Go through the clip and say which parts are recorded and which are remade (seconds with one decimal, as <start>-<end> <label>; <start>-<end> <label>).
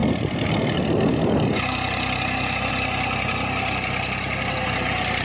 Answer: 0.0-5.2 recorded